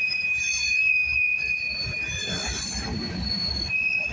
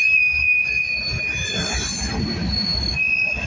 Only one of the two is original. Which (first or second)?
second